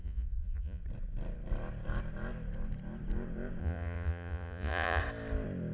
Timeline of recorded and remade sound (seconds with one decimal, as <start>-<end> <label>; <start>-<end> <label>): 0.0-0.8 remade; 0.8-3.6 recorded; 3.6-5.0 remade; 5.0-5.7 recorded